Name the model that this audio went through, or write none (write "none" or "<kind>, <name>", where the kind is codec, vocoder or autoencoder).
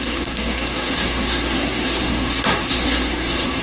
codec, SNAC